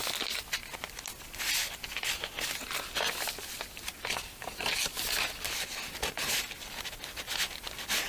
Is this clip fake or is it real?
real